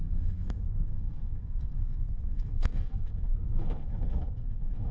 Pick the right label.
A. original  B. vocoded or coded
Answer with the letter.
B